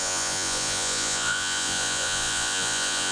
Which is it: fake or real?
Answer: fake